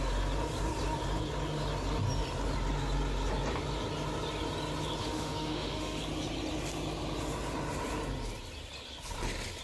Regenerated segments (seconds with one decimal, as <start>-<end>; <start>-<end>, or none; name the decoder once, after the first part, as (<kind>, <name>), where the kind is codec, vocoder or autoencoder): 5.0-6.0 (autoencoder, DAC-VAE)